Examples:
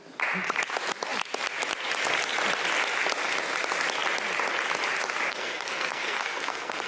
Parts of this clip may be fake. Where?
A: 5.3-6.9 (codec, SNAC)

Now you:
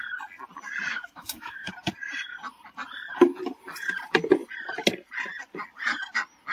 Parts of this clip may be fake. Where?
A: 0.9-1.7 (autoencoder, DAC-VAE)